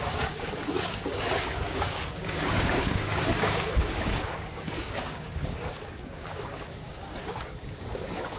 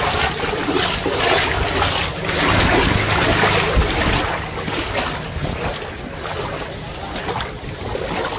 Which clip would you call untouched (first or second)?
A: second